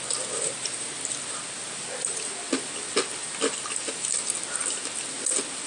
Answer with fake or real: real